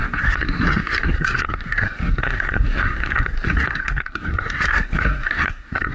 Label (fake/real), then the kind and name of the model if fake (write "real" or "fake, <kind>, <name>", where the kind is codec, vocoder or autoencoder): fake, codec, SNAC